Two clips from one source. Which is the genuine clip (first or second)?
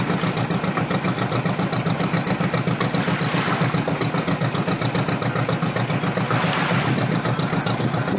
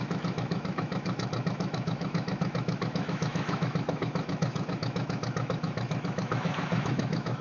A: first